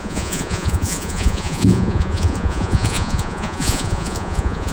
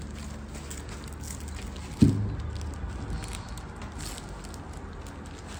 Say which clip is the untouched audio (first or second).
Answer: second